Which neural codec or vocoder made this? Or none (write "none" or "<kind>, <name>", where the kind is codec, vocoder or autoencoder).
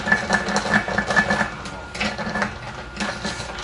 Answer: none